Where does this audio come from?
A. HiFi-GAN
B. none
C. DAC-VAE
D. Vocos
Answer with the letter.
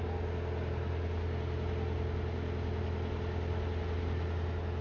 B